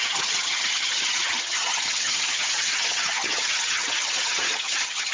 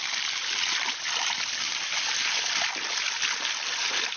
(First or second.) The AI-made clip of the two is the first